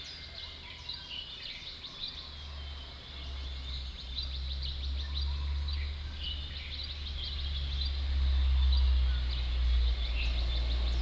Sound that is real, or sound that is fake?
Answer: real